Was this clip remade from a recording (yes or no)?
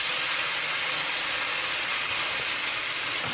no